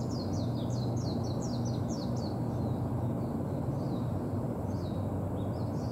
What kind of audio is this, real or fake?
real